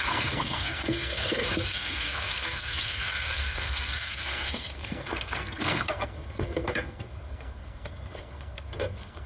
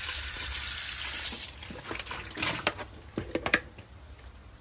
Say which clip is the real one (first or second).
second